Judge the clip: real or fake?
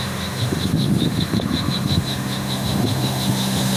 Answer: fake